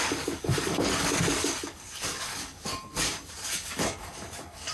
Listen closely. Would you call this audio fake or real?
fake